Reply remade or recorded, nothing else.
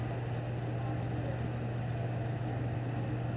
recorded